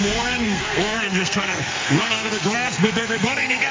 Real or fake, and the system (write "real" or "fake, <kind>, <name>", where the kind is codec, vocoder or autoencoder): fake, codec, SNAC